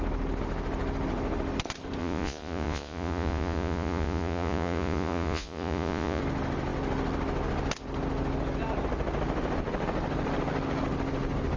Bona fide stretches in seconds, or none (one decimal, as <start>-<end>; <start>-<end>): 0.0-2.0; 6.2-11.6